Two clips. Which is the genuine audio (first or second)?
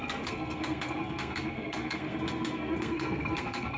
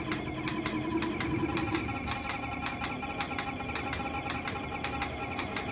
second